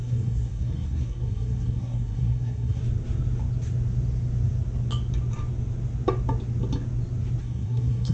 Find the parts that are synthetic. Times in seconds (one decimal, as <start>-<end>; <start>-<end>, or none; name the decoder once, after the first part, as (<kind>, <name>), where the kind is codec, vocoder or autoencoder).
0.0-2.8 (codec, SNAC); 7.4-8.1